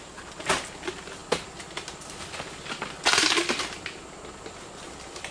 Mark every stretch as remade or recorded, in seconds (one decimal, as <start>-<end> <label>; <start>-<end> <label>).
0.0-5.3 recorded